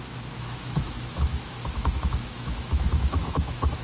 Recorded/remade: remade